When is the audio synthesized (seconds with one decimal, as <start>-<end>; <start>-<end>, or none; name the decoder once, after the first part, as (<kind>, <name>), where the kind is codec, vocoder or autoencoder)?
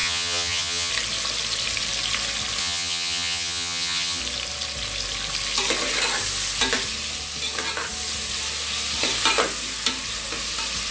0.0-0.9 (vocoder, HiFi-GAN); 2.6-4.2